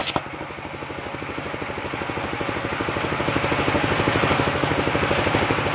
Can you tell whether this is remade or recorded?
recorded